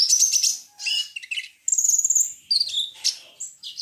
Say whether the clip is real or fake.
real